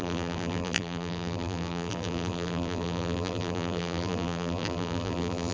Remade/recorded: remade